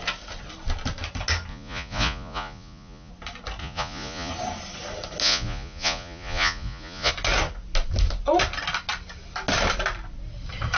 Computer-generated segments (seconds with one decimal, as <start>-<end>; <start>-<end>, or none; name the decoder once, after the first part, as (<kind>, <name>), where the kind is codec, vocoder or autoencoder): 1.5-3.1 (vocoder, Vocos); 3.6-4.3; 5.2-7.1